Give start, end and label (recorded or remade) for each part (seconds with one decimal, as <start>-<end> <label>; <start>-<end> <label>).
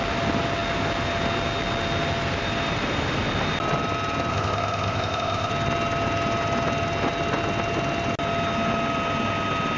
0.0-4.3 recorded; 4.3-5.5 remade; 5.5-9.8 recorded